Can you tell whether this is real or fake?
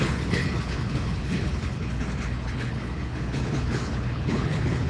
fake